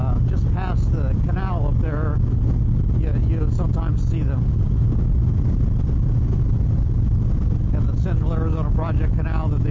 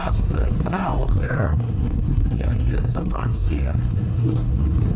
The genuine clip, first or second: first